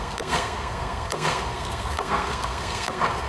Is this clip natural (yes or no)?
no